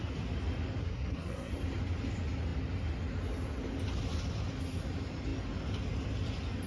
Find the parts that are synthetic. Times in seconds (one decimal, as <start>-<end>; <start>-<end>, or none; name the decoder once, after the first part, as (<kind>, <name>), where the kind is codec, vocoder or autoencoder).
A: 0.8-1.5 (codec, SNAC)

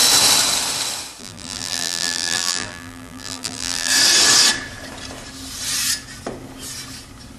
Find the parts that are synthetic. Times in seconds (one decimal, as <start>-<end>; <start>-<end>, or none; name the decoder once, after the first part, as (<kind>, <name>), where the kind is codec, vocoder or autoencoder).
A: 1.2-3.9 (vocoder, BigVGAN v2)

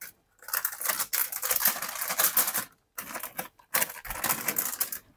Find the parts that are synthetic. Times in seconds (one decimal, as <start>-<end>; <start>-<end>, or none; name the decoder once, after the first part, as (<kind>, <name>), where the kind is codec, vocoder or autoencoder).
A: none

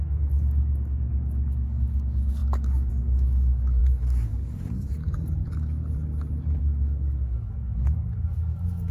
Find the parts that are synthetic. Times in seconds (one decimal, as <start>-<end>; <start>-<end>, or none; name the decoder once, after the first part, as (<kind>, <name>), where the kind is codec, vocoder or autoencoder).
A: 0.0-5.8 (codec, DAC); 6.6-8.9

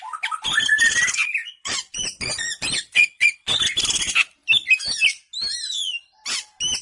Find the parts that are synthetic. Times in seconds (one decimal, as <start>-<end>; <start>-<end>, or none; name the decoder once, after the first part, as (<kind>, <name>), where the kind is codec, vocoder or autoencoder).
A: 1.4-3.6 (vocoder, Vocos)

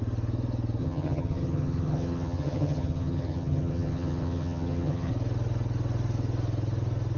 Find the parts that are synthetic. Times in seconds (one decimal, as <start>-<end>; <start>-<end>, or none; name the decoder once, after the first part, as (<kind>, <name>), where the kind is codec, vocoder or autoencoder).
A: 0.8-5.1 (vocoder, HiFi-GAN)

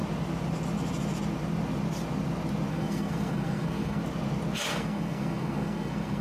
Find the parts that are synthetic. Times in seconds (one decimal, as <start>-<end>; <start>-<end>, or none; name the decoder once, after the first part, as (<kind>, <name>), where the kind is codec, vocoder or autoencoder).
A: 2.7-4.0 (codec, SNAC); 4.7-6.2

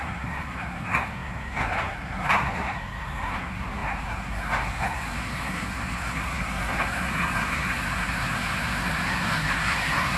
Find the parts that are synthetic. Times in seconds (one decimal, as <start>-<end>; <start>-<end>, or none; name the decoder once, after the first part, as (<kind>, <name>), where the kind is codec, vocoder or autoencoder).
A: 0.0-10.2 (codec, SNAC)